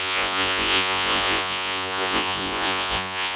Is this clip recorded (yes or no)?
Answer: no